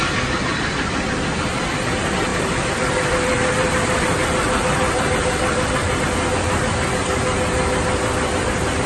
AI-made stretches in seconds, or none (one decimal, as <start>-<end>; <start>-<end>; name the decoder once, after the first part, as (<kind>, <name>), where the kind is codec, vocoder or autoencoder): 2.3-6.0 (vocoder, BigVGAN v2)